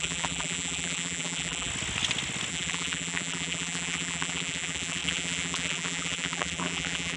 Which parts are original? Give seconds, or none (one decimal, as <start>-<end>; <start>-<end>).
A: 1.7-2.5